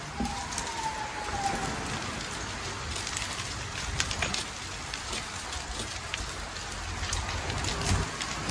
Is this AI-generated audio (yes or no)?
no